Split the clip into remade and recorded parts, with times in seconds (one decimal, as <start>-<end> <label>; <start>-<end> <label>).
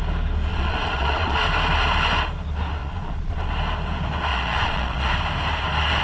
0.0-0.5 recorded; 0.5-1.4 remade; 1.4-2.8 recorded; 2.8-3.5 remade; 3.5-4.3 recorded; 4.3-5.1 remade; 5.1-6.0 recorded